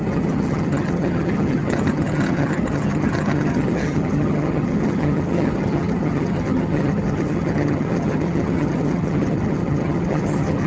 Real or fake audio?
fake